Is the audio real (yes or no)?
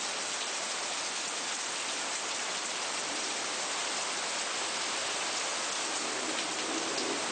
no